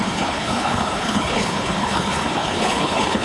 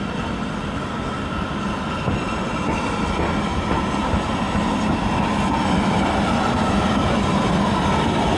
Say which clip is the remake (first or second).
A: first